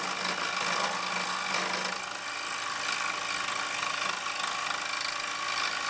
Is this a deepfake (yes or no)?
no